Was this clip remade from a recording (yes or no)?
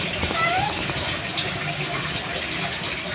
yes